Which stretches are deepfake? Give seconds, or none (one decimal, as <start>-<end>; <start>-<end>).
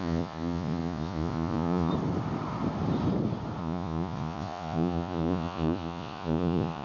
0.0-1.9; 3.6-6.8